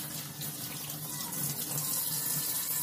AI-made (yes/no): no